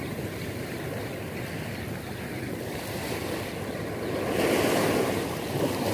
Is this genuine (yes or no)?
yes